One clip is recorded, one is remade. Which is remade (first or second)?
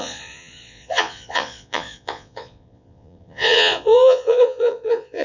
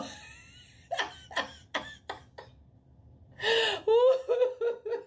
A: first